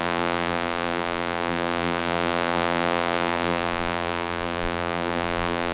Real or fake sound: fake